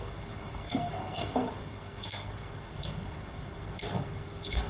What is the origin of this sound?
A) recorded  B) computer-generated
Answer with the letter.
B